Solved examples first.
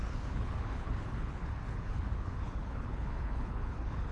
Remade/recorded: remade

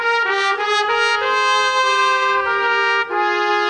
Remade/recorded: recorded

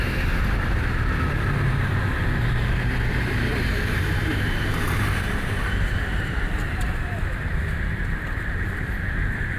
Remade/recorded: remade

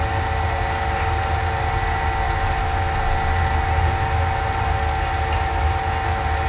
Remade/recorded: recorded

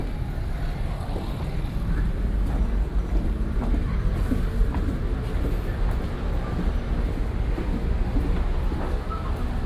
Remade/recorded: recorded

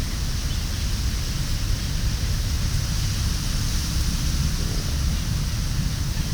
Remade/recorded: recorded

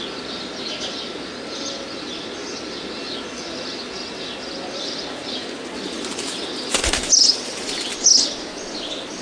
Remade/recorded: recorded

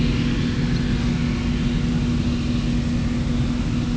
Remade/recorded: recorded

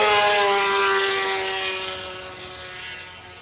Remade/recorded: recorded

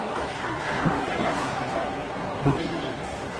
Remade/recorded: remade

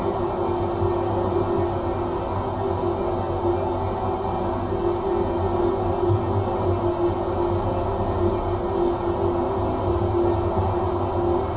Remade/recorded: recorded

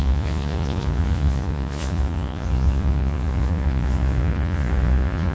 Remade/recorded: remade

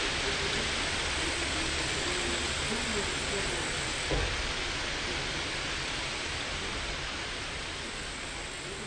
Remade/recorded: recorded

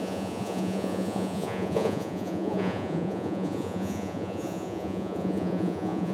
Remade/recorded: remade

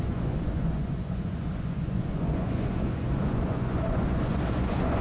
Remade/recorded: remade